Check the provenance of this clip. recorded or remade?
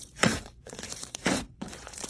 remade